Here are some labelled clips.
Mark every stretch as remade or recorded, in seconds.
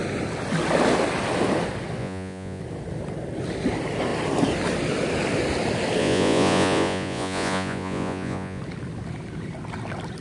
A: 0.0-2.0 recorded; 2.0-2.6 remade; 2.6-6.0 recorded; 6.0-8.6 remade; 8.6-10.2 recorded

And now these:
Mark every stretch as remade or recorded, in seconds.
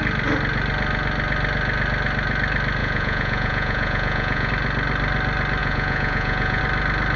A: 0.0-2.8 recorded; 2.8-4.5 remade; 4.5-5.6 recorded; 5.6-6.6 remade; 6.6-7.2 recorded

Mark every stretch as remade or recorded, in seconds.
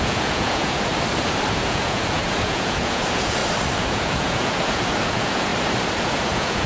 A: 0.0-0.9 remade; 0.9-1.5 recorded; 1.5-3.4 remade; 3.4-3.9 recorded; 3.9-5.5 remade; 5.5-6.0 recorded; 6.0-6.7 remade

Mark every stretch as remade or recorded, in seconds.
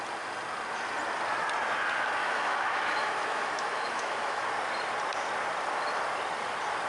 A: 0.0-2.2 recorded; 2.2-4.4 remade; 4.4-6.9 recorded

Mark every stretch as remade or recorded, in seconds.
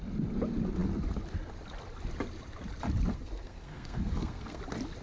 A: 0.0-3.1 recorded; 3.1-4.6 remade; 4.6-5.0 recorded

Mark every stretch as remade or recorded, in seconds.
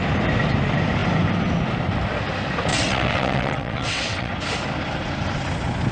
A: 0.0-2.7 recorded; 2.7-4.3 remade; 4.3-5.9 recorded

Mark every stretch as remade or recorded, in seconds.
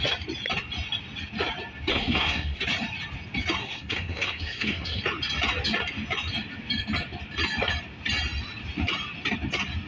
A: 0.0-1.9 recorded; 1.9-2.6 remade; 2.6-3.6 recorded; 3.6-5.0 remade; 5.0-9.9 recorded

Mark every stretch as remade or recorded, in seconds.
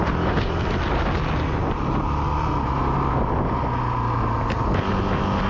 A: 0.0-5.5 recorded